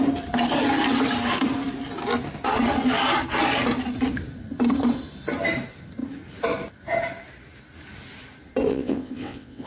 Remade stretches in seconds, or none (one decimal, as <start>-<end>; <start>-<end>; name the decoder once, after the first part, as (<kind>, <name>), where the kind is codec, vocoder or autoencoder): 8.7-9.7 (vocoder, WaveNeXt)